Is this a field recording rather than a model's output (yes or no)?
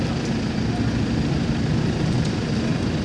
yes